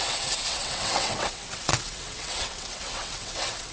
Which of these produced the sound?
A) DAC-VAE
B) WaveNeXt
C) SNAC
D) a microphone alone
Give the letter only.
B